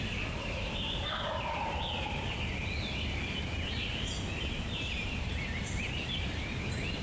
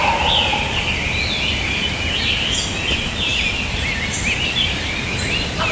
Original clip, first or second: second